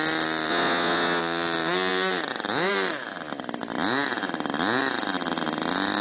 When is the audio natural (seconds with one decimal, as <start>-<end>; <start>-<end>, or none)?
0.0-0.5; 1.2-6.0